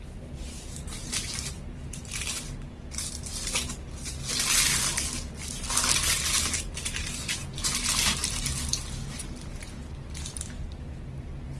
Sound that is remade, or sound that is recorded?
recorded